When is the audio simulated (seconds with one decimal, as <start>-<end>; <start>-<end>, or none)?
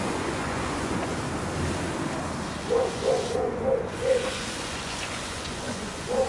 0.0-1.1; 2.6-6.3